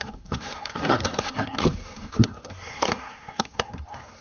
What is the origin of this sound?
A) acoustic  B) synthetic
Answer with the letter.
B